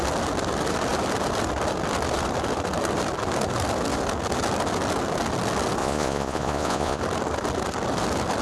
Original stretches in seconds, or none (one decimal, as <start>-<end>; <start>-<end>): 0.0-5.8; 7.0-8.4